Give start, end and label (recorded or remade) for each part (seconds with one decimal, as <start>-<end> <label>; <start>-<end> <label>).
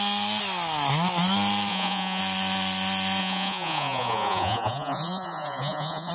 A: 0.0-1.7 recorded; 1.7-2.2 remade; 2.2-3.2 recorded; 3.2-6.1 remade